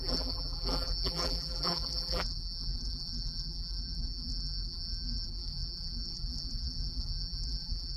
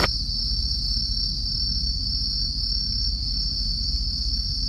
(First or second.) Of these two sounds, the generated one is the first